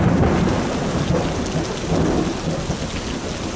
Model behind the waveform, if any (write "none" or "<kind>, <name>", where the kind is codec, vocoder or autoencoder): none